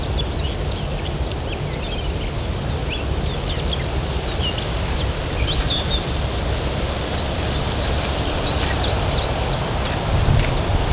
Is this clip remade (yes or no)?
no